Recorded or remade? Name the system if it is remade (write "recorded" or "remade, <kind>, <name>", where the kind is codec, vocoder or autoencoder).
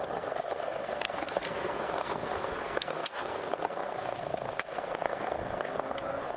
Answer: remade, codec, SNAC